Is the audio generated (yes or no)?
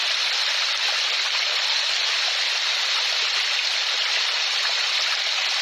no